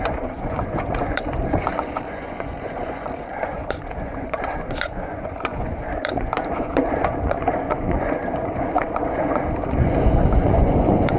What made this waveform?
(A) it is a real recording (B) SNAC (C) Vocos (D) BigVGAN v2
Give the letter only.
C